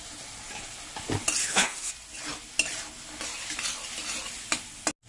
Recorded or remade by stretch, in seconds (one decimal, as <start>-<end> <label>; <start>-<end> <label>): 0.0-1.4 recorded; 1.4-1.9 remade; 1.9-5.1 recorded